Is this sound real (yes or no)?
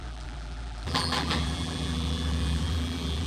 no